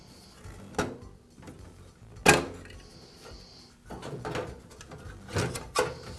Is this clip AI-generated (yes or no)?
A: no